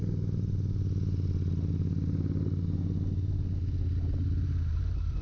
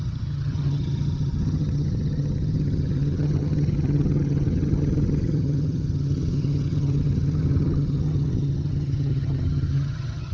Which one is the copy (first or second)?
second